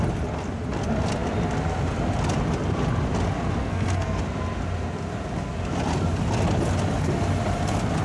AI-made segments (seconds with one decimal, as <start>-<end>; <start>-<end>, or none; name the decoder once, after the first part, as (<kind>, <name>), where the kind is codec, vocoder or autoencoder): 3.6-4.2 (codec, SNAC)